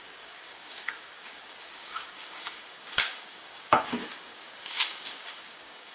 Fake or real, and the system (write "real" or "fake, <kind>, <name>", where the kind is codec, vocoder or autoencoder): fake, codec, DAC